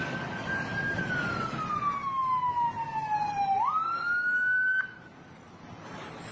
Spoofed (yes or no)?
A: no